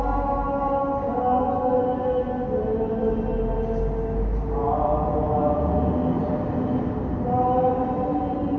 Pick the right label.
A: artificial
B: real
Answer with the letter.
B